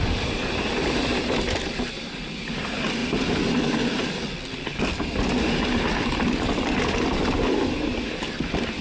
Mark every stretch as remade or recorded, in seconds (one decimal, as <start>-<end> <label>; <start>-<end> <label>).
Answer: 0.0-8.8 recorded